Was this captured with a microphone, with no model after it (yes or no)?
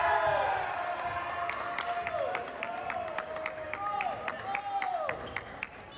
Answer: yes